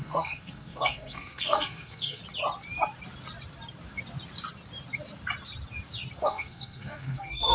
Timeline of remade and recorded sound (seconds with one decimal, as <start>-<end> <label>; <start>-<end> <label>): 0.0-2.2 remade; 2.2-6.2 recorded; 6.2-7.5 remade